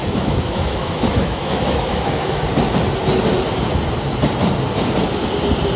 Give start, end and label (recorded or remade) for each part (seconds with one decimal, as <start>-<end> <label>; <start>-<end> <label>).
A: 0.0-2.4 remade; 2.4-5.8 recorded